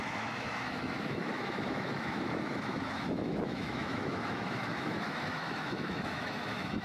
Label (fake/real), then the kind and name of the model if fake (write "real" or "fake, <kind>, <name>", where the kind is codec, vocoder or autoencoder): fake, autoencoder, DAC-VAE